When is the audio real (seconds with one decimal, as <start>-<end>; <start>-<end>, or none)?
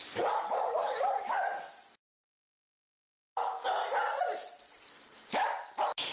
0.0-6.1